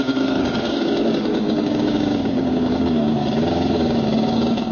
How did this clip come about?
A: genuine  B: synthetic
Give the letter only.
B